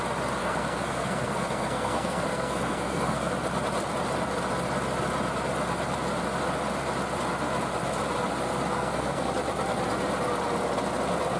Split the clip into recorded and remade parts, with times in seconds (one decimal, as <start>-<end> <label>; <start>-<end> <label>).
0.0-0.4 recorded; 0.4-3.3 remade; 3.3-8.7 recorded; 8.7-9.3 remade; 9.3-11.4 recorded